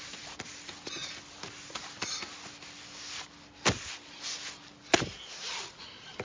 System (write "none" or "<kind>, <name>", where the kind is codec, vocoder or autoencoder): none